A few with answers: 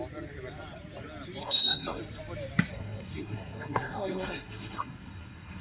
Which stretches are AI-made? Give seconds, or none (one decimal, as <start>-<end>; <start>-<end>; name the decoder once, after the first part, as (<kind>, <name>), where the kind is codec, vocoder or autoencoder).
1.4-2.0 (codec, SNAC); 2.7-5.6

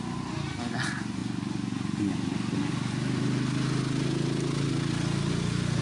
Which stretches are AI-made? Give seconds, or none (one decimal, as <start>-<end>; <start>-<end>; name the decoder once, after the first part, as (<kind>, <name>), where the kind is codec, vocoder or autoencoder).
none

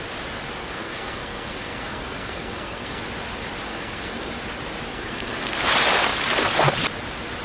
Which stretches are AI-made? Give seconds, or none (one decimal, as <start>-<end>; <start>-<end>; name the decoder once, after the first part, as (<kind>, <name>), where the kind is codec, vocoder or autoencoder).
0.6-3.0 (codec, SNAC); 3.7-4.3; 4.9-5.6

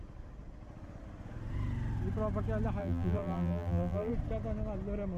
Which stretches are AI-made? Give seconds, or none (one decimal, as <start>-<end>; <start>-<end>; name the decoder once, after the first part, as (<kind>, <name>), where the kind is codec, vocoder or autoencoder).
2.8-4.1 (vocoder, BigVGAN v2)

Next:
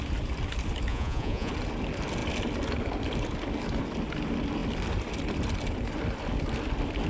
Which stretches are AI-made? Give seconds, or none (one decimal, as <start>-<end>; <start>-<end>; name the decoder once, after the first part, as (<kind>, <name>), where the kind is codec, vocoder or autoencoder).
0.9-1.5 (vocoder, Vocos)

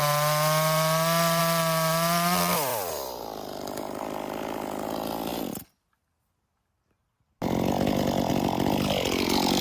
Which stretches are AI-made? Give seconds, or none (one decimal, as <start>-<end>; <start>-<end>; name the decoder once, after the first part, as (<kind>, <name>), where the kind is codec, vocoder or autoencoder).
0.0-1.4 (vocoder, BigVGAN v2); 2.7-4.0